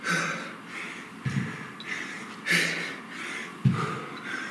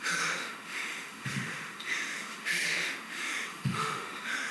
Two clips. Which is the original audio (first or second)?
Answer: first